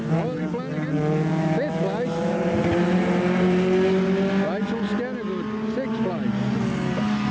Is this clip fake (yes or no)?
no